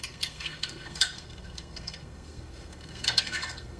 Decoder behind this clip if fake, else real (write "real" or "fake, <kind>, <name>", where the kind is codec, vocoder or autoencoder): fake, codec, SNAC